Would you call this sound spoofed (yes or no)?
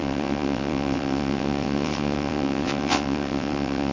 yes